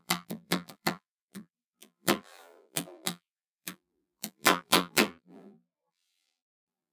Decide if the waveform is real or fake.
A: fake